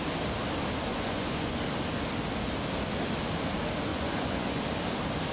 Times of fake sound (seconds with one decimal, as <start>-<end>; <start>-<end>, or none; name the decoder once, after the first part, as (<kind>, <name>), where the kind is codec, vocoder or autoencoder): 0.9-1.6 (vocoder, Vocos); 3.9-4.6